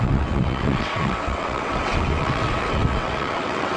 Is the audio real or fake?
fake